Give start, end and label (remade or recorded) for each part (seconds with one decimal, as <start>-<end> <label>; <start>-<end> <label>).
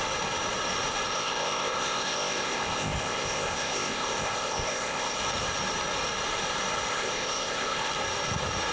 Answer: 0.0-1.1 recorded; 1.1-5.2 remade; 5.2-6.9 recorded; 6.9-7.9 remade; 7.9-8.7 recorded